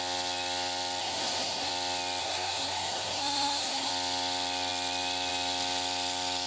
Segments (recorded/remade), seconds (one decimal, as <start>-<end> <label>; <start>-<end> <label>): 0.0-1.0 recorded; 1.0-1.7 remade; 1.7-2.2 recorded; 2.2-3.9 remade; 3.9-6.5 recorded